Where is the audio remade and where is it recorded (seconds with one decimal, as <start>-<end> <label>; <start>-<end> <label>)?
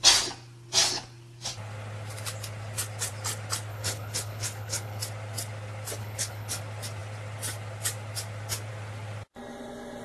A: 0.0-3.7 recorded; 3.7-5.0 remade; 5.0-6.0 recorded; 6.0-6.6 remade; 6.6-10.0 recorded